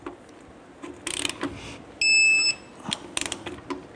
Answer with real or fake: real